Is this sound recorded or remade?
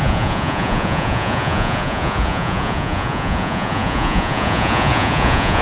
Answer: remade